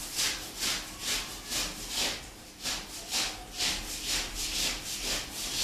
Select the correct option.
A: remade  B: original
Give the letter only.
B